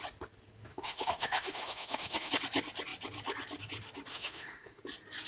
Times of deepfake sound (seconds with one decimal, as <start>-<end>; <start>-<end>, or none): 0.7-2.3; 4.1-4.8